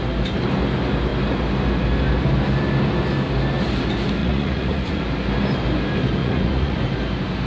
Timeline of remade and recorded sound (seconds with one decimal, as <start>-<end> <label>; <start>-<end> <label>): 0.0-4.2 recorded; 4.2-5.0 remade; 5.0-6.2 recorded; 6.2-6.8 remade; 6.8-7.5 recorded